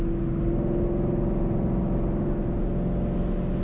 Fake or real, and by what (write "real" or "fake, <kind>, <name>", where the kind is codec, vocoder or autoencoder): real